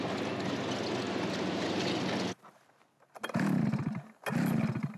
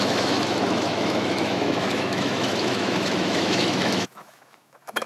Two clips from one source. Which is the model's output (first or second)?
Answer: second